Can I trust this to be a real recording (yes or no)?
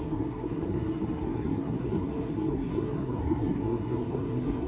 no